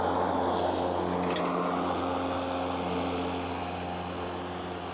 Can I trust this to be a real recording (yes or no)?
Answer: yes